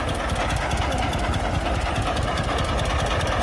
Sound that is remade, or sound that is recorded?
recorded